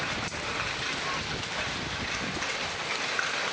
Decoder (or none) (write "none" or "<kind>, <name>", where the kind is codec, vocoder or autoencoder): none